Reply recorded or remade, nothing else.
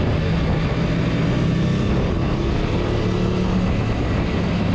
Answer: recorded